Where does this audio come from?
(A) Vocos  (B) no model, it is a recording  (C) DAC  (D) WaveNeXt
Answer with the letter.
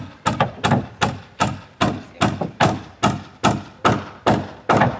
B